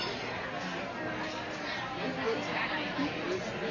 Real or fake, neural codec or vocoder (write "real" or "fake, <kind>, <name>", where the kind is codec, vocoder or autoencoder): real